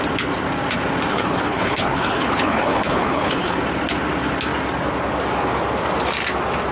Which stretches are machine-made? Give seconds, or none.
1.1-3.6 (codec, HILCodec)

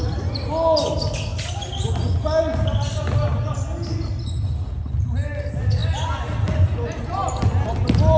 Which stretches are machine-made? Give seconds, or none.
none

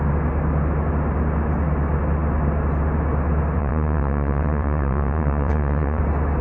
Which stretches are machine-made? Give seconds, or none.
3.6-6.0 (vocoder, WaveNeXt)

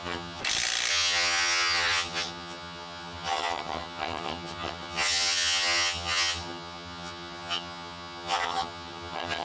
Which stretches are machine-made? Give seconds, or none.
0.0-0.4 (vocoder, HiFi-GAN); 0.9-9.4

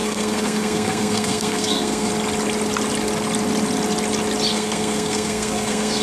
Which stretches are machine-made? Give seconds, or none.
0.0-2.1 (codec, SNAC); 4.5-6.0